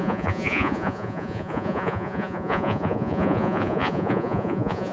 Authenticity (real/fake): fake